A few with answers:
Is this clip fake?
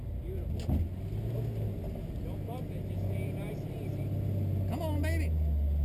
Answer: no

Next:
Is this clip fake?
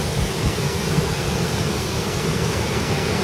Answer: yes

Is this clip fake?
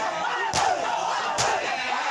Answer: no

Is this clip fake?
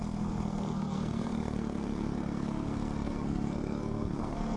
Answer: yes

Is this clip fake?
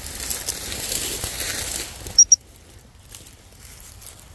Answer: no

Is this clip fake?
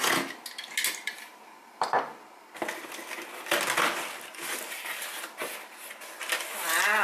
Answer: no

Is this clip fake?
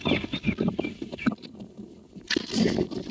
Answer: no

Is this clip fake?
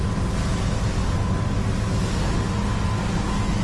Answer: no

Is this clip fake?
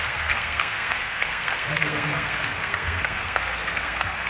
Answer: yes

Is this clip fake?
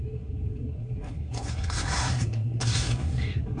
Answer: yes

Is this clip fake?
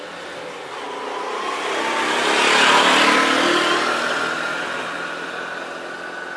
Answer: no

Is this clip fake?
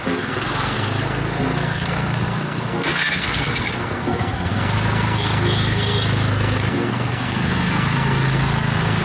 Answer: yes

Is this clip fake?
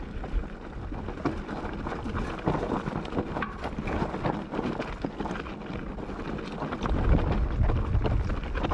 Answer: no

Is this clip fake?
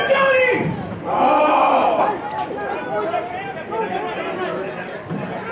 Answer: no